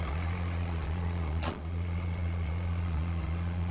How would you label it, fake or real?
fake